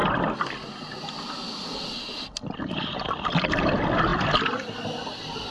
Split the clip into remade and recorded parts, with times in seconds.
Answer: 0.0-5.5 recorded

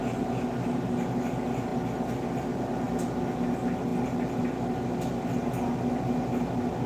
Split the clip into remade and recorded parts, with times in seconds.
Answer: 0.0-6.9 recorded

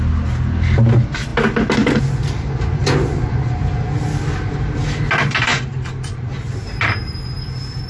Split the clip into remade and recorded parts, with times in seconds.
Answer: 0.0-2.8 recorded; 2.8-3.7 remade; 3.7-5.5 recorded; 5.5-7.9 remade

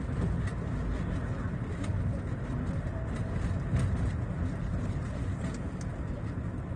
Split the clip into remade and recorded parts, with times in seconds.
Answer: 0.0-6.8 recorded

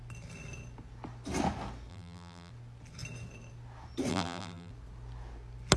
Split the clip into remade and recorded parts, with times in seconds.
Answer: 0.0-1.9 recorded; 1.9-2.5 remade; 2.5-4.1 recorded; 4.1-4.7 remade; 4.7-5.8 recorded

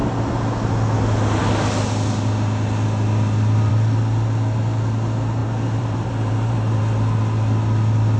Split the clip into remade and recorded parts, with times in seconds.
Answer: 0.0-5.4 recorded; 5.4-6.8 remade; 6.8-8.2 recorded

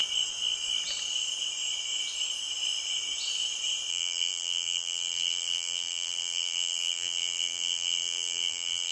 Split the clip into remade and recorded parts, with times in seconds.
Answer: 0.0-3.9 recorded; 3.9-8.9 remade